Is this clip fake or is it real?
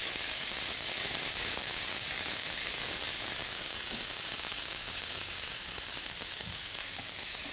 fake